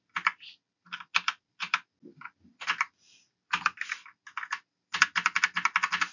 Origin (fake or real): real